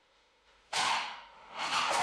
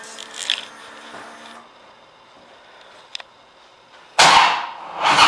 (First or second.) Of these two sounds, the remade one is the first